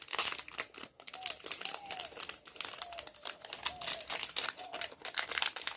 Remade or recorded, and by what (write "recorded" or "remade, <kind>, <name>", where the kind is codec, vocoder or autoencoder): recorded